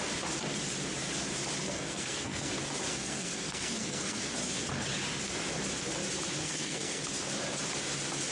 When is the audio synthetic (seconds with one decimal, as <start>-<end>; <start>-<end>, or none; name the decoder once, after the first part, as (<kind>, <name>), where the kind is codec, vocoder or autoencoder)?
1.6-2.5 (codec, SNAC); 2.9-4.2; 6.4-7.0